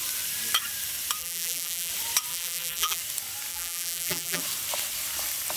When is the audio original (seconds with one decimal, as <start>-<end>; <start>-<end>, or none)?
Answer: 0.0-1.2; 1.9-2.3; 3.0-3.5; 4.4-5.6

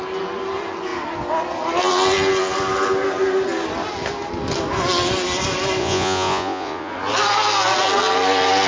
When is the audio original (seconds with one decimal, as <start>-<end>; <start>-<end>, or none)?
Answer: 0.0-5.8; 6.9-8.7

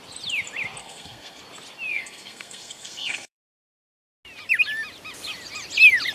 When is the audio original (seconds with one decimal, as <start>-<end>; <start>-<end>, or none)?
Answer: 0.0-0.8; 1.4-1.9; 3.9-6.1

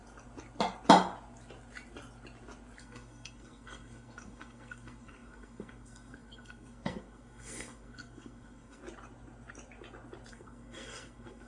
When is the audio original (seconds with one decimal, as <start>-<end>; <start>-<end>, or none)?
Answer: 0.0-2.8; 8.8-10.3

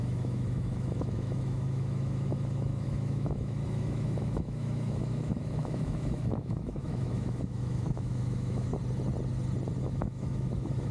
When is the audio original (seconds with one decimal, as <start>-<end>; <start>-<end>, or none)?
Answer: 8.7-9.8

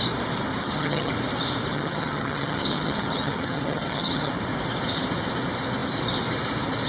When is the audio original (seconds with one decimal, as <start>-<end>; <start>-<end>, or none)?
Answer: 0.0-0.6; 1.1-1.7; 4.3-6.9